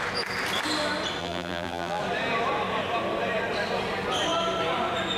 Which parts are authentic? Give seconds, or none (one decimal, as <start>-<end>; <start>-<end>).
0.0-1.2; 2.0-5.2